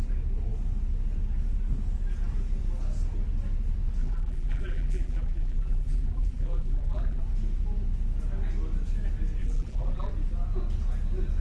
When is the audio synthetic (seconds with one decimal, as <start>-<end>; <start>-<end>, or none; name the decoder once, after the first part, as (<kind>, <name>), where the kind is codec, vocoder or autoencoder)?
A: 4.0-7.2 (vocoder, BigVGAN v2); 9.4-10.1

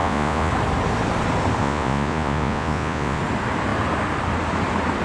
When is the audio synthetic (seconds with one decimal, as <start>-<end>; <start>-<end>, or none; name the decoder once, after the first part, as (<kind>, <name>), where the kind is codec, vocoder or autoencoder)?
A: 0.0-0.5 (vocoder, Vocos); 1.6-3.2

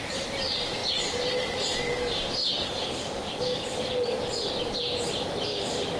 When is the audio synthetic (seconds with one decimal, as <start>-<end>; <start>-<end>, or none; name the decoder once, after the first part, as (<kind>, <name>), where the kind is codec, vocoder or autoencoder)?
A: 2.4-4.2 (codec, DAC); 5.5-6.0